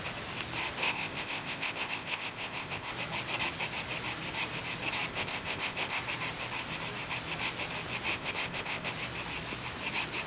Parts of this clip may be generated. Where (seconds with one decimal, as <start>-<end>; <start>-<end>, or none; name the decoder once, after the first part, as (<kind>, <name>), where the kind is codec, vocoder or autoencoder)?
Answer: 0.8-2.9 (codec, ZipCodec); 5.1-6.0; 8.1-8.9